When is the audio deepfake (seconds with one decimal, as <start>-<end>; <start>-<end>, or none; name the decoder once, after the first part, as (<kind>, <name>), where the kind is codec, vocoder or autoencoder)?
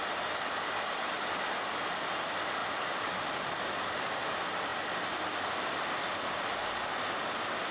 0.0-4.7 (vocoder, BigVGAN v2); 7.1-7.7